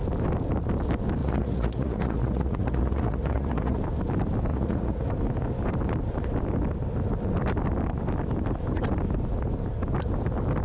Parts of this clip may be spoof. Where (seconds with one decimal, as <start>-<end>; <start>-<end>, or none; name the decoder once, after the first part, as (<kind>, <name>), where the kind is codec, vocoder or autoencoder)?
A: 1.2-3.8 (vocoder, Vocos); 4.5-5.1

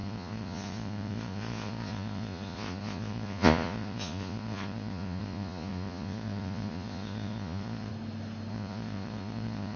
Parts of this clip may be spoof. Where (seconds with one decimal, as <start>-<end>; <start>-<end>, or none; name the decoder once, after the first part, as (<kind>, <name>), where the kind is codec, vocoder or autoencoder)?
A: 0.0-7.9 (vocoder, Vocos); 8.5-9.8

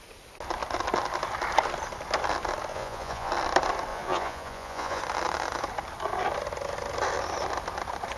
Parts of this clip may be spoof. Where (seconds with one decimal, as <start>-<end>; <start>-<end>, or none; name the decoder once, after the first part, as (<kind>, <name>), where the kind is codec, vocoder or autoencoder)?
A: 2.7-3.3 (vocoder, Vocos); 3.9-5.0

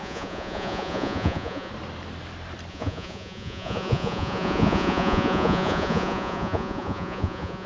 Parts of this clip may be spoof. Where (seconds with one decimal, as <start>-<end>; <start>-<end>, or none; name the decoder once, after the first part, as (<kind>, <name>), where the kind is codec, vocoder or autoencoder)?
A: 0.0-1.7 (vocoder, Vocos); 2.7-7.7

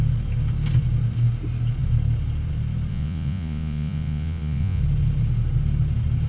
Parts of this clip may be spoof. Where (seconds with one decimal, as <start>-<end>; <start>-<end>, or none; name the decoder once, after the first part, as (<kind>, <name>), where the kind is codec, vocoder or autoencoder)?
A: 2.9-4.8 (vocoder, Vocos)

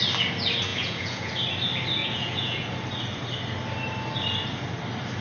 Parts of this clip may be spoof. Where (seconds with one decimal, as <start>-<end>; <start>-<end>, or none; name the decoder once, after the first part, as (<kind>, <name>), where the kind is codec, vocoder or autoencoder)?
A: 0.7-1.3 (vocoder, Vocos); 2.0-2.7

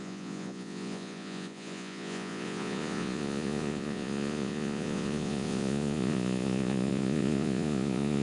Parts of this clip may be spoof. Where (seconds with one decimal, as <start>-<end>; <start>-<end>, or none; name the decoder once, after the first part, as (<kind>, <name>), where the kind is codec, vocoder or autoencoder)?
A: 0.0-8.2 (vocoder, Vocos)